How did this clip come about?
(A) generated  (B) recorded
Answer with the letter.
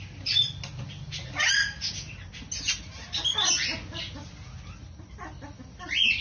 B